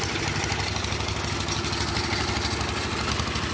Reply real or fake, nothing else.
real